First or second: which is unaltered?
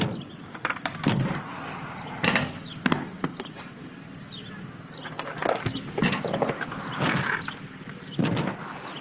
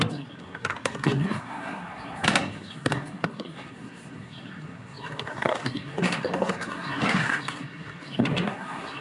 first